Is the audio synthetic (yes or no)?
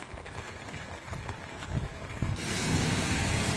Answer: yes